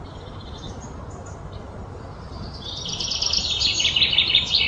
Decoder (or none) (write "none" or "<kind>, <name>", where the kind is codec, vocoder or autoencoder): none